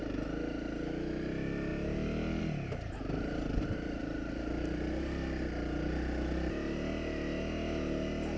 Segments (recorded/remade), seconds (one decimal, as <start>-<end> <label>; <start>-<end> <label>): 0.0-8.4 recorded